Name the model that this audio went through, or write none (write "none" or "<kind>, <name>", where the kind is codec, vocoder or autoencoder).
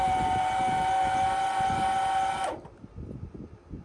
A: none